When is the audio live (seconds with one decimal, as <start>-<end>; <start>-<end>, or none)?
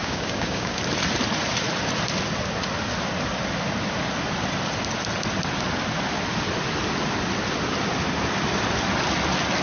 0.8-9.6